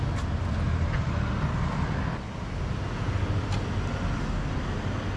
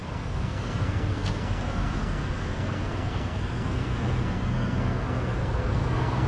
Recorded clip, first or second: first